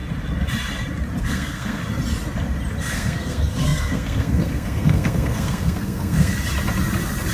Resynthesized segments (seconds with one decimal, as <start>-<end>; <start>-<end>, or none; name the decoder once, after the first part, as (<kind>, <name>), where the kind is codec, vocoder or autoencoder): 1.2-1.8 (codec, SNAC); 2.8-6.3